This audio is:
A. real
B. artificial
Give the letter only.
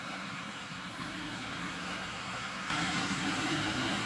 B